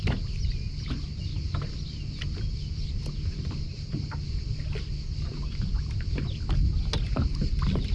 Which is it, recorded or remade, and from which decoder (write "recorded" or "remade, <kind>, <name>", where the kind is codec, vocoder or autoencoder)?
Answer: recorded